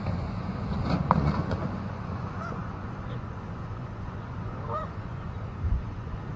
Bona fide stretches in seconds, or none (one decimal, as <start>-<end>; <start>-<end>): none